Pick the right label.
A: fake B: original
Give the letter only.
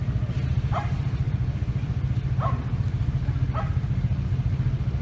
B